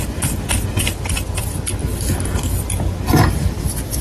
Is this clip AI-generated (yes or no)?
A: no